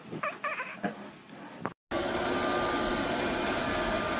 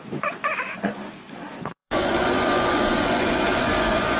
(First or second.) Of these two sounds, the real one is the first